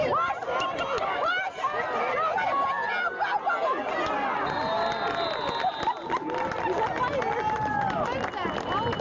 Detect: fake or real real